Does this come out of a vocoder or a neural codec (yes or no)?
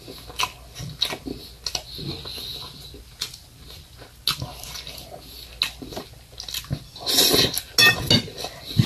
no